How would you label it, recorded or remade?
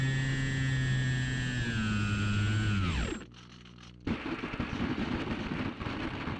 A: recorded